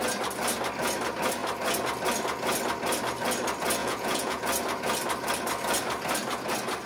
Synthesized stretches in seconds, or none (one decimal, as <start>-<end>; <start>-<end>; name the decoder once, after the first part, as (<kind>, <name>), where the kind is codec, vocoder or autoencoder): 3.8-4.4 (vocoder, Vocos)

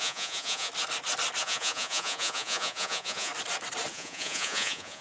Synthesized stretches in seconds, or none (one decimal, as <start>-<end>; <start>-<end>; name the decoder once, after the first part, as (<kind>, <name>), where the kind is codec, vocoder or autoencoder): 0.0-0.7 (vocoder, Vocos); 1.4-3.3; 3.9-5.0

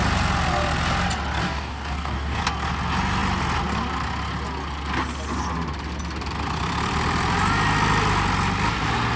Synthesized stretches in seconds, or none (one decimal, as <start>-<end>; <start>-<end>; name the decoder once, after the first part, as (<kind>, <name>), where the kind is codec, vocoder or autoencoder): 1.4-2.4 (codec, DAC)

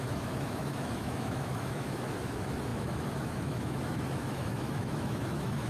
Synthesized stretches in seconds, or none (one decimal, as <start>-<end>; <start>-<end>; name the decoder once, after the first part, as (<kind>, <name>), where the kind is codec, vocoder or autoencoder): 0.0-5.7 (autoencoder, DAC-VAE)

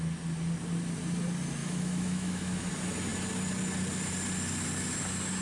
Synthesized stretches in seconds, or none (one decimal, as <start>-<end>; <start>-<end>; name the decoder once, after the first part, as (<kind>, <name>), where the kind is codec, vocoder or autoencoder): 1.6-2.7 (autoencoder, DAC-VAE)